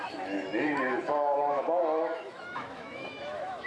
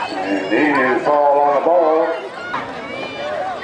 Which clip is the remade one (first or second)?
first